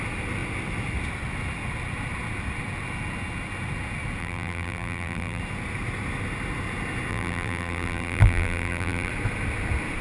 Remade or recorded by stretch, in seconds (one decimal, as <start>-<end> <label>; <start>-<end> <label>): 0.0-4.2 recorded; 4.2-5.4 remade; 5.4-7.1 recorded; 7.1-9.1 remade; 9.1-10.0 recorded